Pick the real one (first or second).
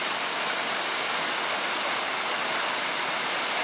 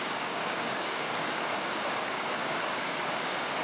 first